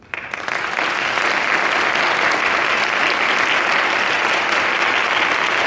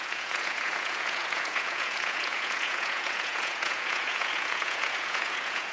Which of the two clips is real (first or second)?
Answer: first